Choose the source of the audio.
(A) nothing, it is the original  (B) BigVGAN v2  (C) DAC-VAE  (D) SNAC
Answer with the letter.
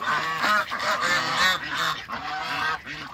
B